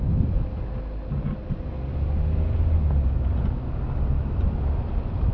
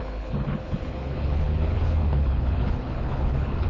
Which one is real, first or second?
first